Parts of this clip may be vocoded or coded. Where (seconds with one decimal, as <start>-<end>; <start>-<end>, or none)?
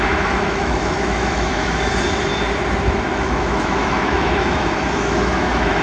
0.0-1.9; 3.1-5.8